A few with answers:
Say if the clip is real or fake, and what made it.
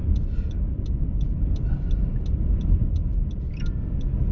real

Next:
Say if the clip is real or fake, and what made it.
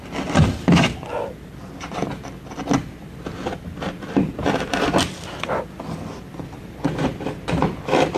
real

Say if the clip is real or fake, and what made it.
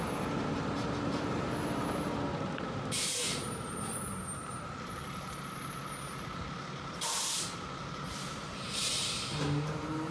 fake, vocoder, BigVGAN v2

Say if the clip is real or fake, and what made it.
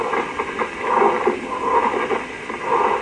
real